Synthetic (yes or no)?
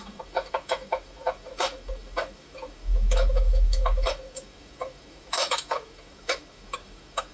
yes